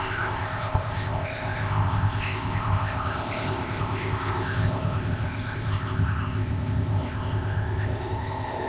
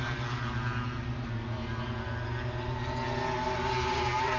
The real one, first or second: second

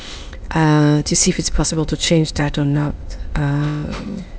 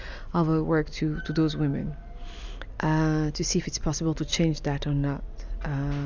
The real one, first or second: second